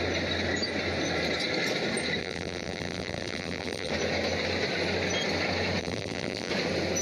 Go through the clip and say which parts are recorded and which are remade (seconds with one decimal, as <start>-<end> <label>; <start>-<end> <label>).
0.0-2.2 recorded; 2.2-3.9 remade; 3.9-5.8 recorded; 5.8-6.5 remade; 6.5-7.0 recorded